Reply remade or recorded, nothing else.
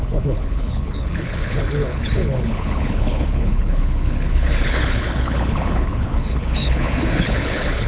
remade